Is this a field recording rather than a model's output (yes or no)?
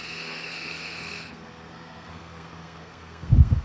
no